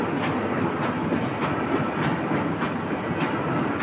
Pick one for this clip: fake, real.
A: real